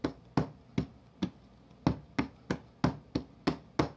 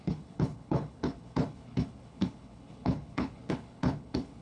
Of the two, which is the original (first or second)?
first